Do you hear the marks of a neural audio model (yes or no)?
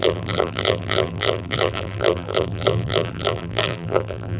yes